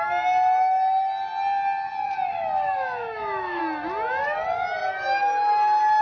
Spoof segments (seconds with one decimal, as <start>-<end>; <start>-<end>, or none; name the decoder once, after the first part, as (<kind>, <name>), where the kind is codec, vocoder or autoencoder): 2.3-3.6 (autoencoder, DAC-VAE)